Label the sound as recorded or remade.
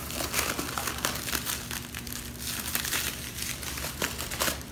recorded